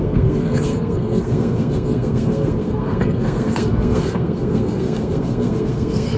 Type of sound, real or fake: fake